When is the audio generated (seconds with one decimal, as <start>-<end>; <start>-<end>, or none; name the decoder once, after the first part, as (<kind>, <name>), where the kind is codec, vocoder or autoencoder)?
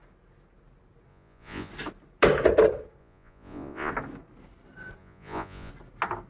1.1-1.7 (vocoder, Vocos); 3.0-3.9; 5.0-5.7